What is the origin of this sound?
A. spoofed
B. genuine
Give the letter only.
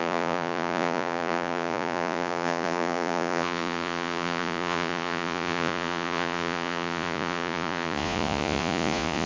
A